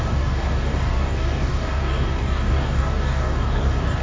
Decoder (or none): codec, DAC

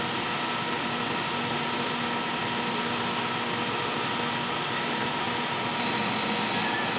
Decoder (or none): none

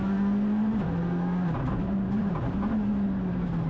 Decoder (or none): none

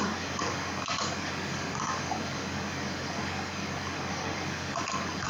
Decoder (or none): codec, DAC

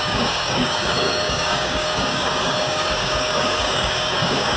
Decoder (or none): codec, DAC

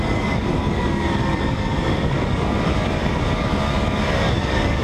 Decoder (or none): codec, DAC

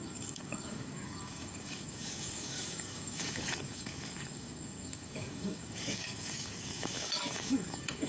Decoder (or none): codec, DAC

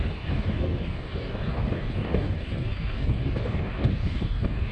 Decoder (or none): codec, DAC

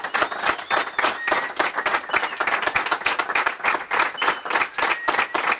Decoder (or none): none